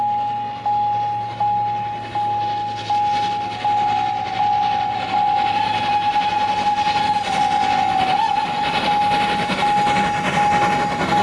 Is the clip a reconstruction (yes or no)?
no